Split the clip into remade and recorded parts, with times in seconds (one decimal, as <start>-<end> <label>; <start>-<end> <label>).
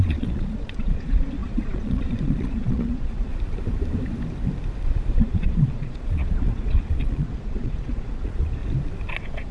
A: 0.0-3.3 remade; 3.3-5.2 recorded; 5.2-8.6 remade; 8.6-9.1 recorded; 9.1-9.5 remade